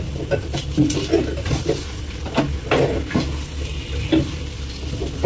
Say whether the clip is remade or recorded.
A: recorded